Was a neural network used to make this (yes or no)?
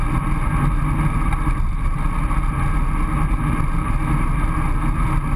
no